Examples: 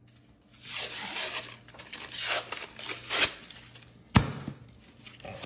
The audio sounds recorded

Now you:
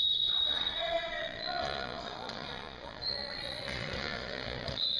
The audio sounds remade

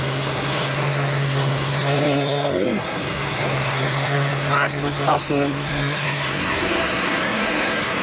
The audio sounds remade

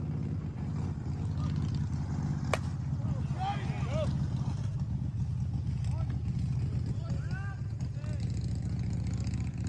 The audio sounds recorded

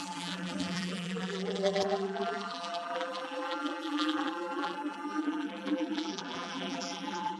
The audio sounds remade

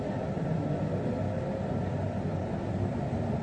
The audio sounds recorded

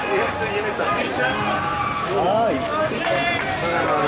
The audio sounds recorded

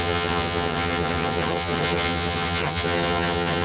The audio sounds remade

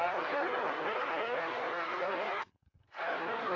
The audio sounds remade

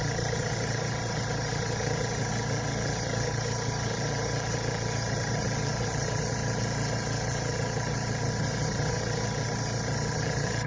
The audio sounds remade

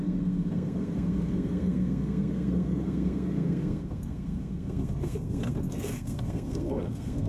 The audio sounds remade